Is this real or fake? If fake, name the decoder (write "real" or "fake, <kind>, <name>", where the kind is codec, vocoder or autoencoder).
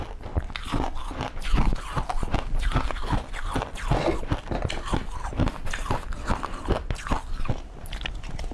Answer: real